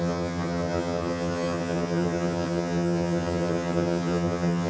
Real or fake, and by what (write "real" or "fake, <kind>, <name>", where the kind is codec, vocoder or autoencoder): fake, vocoder, HiFi-GAN